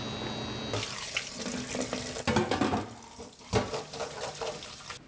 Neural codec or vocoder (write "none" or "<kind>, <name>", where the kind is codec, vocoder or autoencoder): none